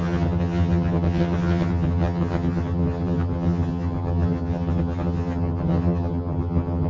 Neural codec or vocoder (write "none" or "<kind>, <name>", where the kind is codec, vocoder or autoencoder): vocoder, HiFi-GAN